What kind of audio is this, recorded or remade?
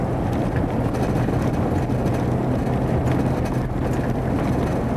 recorded